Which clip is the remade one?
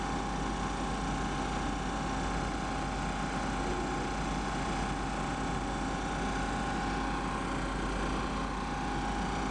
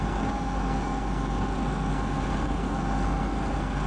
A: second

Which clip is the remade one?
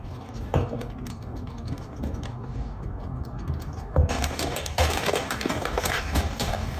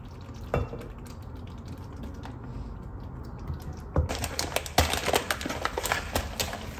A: first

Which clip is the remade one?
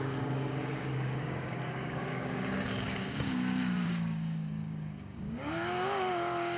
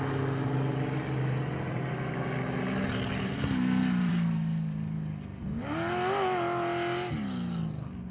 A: first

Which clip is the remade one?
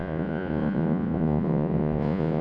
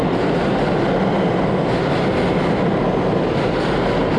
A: first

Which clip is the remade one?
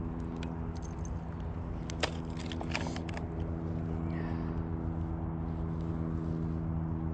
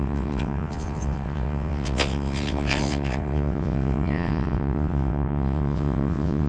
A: second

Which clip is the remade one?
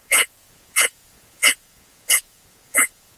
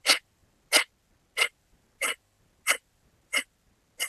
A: first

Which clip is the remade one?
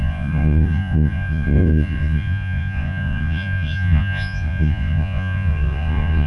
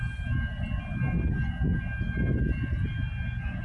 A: first